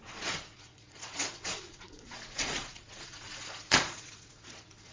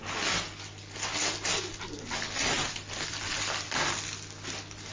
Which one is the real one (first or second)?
second